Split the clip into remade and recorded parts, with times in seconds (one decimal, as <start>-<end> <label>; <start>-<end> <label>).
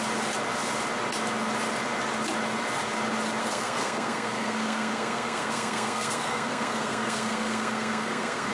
0.0-3.4 recorded; 3.4-8.5 remade